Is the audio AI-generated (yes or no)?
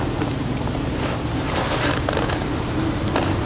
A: yes